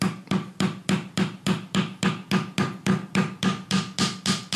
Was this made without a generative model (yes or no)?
yes